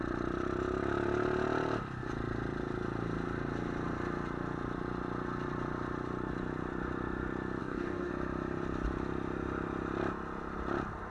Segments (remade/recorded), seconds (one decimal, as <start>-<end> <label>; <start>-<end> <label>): 0.0-7.6 recorded; 7.6-8.1 remade; 8.1-11.1 recorded